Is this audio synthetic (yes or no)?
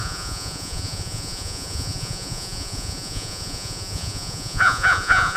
yes